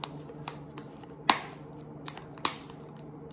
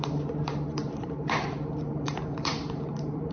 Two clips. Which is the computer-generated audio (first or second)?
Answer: second